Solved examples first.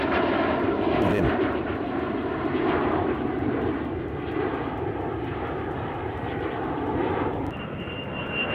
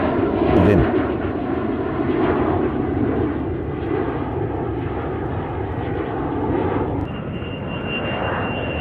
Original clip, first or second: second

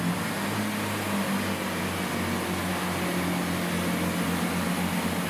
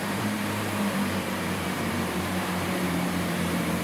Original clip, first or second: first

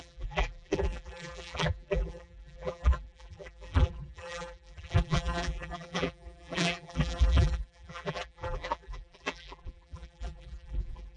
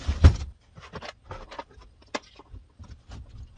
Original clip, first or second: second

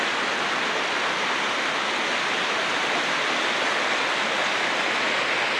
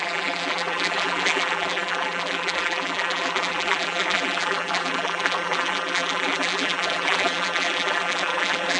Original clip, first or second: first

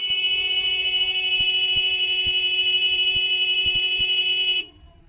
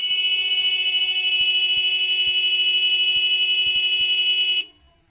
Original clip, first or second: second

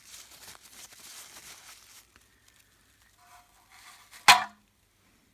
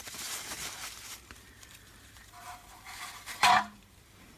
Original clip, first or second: first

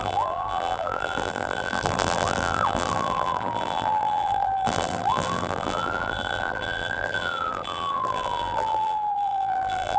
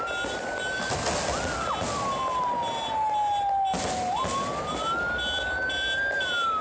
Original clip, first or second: second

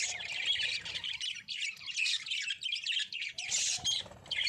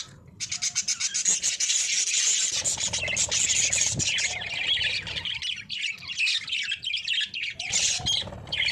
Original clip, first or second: second